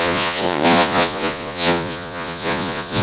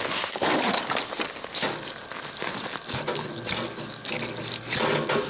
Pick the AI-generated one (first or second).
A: first